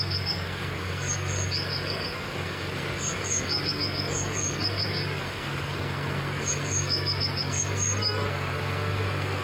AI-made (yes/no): yes